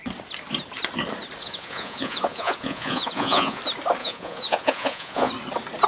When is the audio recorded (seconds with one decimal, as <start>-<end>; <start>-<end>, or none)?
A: 0.0-1.4; 3.6-4.0; 5.3-5.9